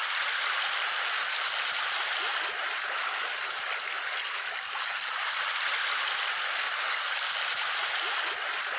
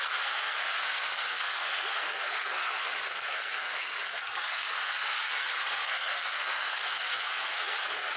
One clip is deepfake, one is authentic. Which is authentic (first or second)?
first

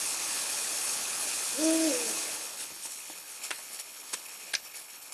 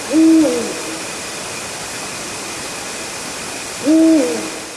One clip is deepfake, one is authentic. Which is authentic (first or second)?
second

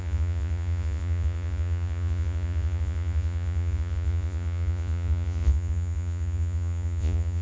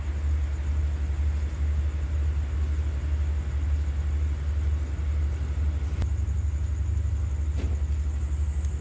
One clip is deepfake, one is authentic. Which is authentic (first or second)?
second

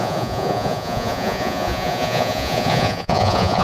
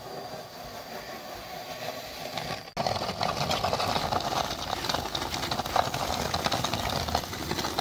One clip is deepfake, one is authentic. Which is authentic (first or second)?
second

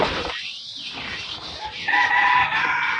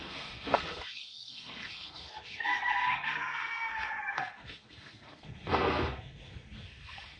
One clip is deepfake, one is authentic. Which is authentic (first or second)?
first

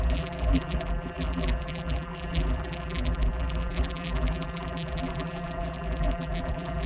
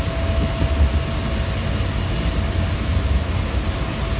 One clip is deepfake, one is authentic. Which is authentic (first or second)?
second